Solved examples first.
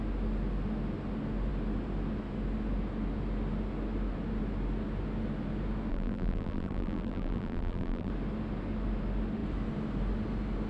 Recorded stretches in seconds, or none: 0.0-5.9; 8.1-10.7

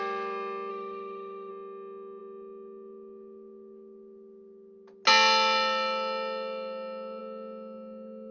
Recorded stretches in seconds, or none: 0.0-0.7; 1.5-8.3

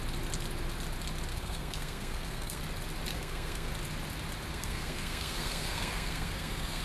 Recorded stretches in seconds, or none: 0.0-1.3; 2.6-3.1; 3.7-4.5

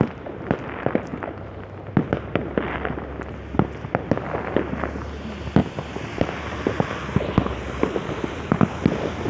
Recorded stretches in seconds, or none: 0.0-9.3